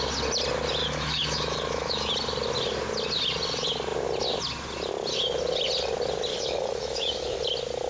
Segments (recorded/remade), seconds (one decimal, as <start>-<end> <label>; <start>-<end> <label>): 0.0-0.8 recorded; 0.8-2.1 remade; 2.1-6.3 recorded; 6.3-7.4 remade; 7.4-7.9 recorded